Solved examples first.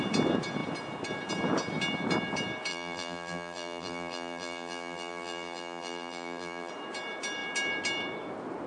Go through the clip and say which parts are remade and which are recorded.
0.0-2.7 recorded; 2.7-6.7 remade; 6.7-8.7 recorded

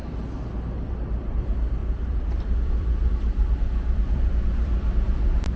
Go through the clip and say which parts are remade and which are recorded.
0.0-1.8 recorded; 1.8-5.6 remade

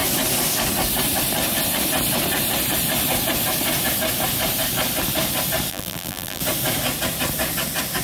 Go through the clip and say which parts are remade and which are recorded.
0.0-5.7 recorded; 5.7-6.4 remade; 6.4-8.0 recorded

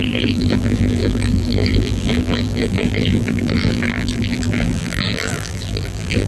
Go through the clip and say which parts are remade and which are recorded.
0.0-6.3 remade

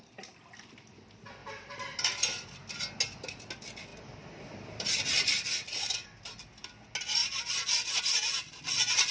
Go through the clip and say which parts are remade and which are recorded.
0.0-1.4 recorded; 1.4-2.8 remade; 2.8-3.9 recorded; 3.9-6.4 remade; 6.4-7.2 recorded; 7.2-7.9 remade; 7.9-9.1 recorded

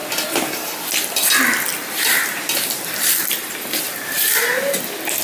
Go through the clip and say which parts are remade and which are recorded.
0.0-1.7 recorded; 1.7-4.8 remade; 4.8-5.2 recorded